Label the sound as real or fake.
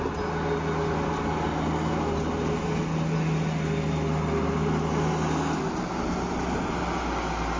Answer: real